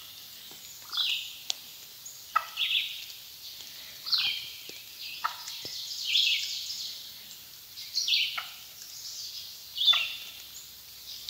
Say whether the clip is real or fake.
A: real